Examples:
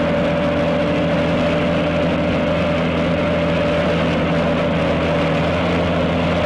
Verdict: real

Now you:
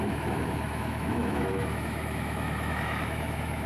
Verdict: fake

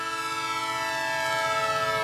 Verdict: real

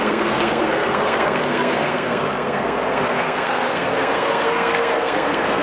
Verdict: fake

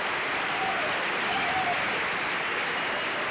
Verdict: real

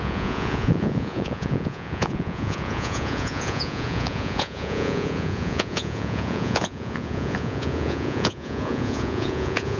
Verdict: fake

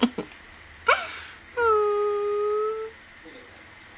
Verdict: real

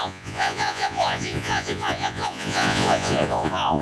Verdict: fake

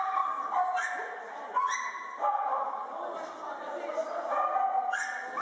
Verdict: real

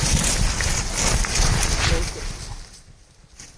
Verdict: real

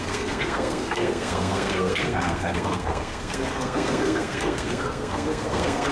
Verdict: fake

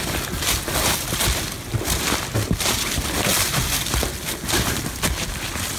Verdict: real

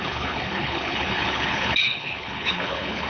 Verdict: fake